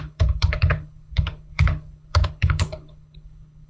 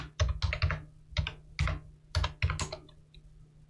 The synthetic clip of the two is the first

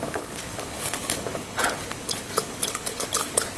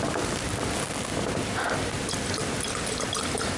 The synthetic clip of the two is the first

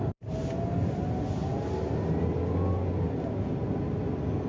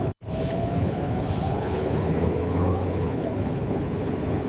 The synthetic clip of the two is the second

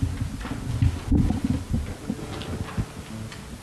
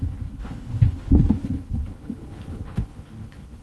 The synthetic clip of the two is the second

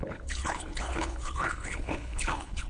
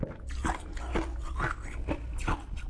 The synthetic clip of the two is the first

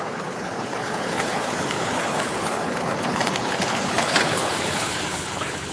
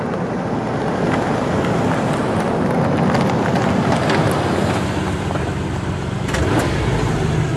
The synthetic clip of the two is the first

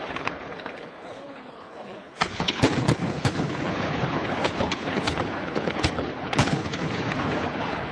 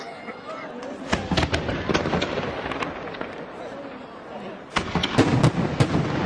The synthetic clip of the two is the first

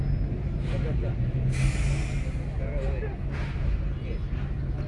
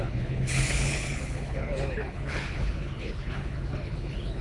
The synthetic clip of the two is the second